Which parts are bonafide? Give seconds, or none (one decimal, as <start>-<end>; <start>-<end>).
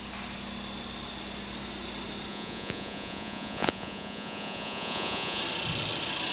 0.0-2.3; 5.4-6.3